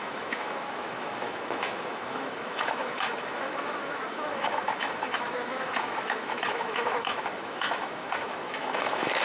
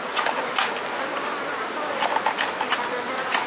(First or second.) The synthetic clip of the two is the first